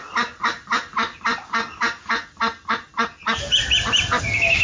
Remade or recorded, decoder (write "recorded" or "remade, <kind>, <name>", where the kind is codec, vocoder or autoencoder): recorded